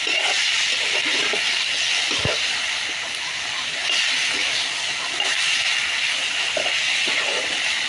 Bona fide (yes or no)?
yes